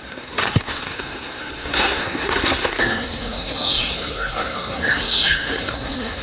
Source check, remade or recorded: remade